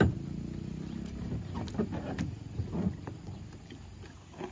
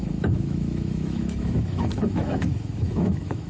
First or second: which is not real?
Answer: second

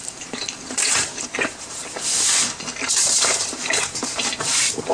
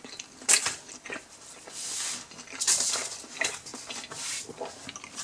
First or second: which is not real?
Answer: first